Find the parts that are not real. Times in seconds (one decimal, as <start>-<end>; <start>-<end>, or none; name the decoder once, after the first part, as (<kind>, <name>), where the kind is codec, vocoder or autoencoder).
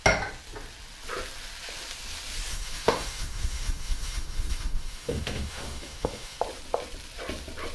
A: 2.5-6.4 (autoencoder, DAC-VAE)